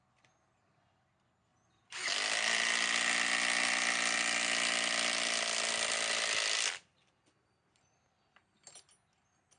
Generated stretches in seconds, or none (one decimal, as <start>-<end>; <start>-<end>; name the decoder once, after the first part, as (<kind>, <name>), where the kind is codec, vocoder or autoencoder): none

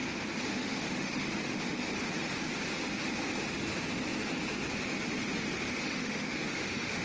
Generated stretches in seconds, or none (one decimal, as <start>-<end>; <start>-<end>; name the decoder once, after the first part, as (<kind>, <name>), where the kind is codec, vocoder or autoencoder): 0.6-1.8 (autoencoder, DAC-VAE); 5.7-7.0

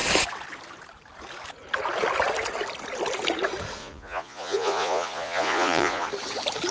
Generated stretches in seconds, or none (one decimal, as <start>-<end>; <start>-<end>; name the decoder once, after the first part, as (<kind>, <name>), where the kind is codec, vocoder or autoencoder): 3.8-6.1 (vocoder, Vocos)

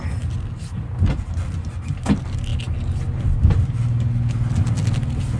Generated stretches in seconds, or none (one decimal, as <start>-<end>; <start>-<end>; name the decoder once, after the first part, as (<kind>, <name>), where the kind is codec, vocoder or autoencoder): none

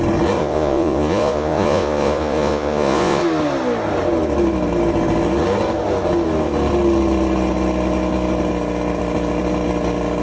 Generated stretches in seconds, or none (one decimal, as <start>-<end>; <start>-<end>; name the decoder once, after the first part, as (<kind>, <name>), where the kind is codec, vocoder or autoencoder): 0.4-3.2 (vocoder, Vocos)

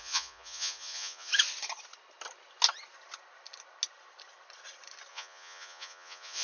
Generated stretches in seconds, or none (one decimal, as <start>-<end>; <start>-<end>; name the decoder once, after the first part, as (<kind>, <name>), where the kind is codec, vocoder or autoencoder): 0.0-1.3 (vocoder, Vocos); 5.1-6.4

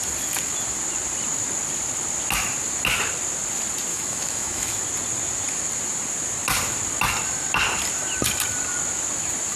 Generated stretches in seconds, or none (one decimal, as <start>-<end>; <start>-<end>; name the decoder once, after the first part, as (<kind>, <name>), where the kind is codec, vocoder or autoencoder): 3.9-4.8 (autoencoder, DAC-VAE)

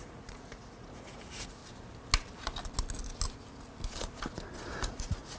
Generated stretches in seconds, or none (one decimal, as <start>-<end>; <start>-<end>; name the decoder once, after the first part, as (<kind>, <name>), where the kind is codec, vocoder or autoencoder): 0.0-1.6 (vocoder, Vocos); 4.8-5.4